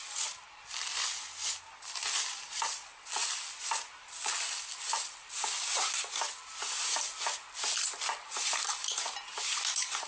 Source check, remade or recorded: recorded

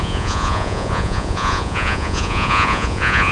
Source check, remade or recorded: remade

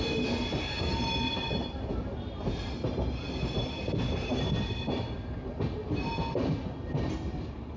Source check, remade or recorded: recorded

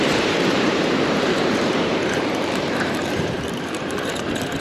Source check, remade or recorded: remade